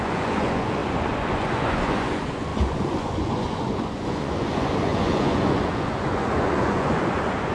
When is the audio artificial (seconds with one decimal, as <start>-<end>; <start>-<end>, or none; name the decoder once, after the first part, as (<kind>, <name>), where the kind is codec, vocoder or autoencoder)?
0.0-7.5 (vocoder, Vocos)